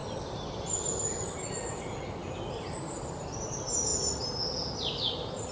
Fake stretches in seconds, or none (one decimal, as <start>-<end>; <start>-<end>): none

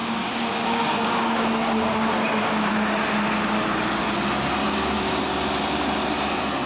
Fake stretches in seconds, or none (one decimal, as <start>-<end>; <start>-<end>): 0.0-2.7; 4.6-5.1

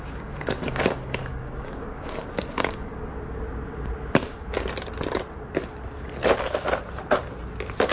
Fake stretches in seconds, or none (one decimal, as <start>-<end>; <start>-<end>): 0.0-3.1

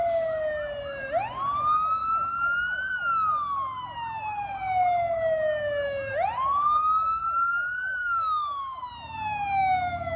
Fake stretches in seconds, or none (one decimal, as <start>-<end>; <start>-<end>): 8.0-8.8

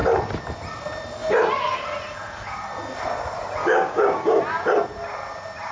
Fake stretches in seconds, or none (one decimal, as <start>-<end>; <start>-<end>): 3.6-4.4

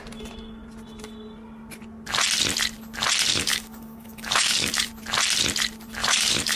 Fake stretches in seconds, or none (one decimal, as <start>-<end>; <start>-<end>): 3.3-4.9; 6.0-6.6

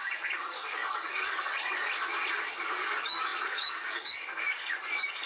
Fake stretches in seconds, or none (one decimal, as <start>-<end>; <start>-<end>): 0.0-1.9; 2.6-5.3

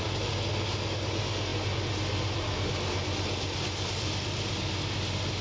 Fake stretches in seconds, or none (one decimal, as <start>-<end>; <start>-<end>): none